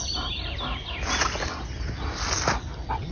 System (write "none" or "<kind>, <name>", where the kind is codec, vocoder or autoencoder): none